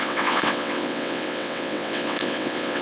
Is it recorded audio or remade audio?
remade